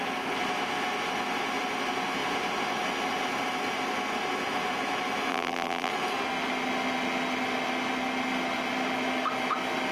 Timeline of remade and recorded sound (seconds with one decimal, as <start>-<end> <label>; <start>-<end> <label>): 0.0-5.3 recorded; 5.3-5.9 remade; 5.9-9.9 recorded